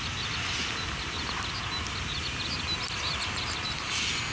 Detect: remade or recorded recorded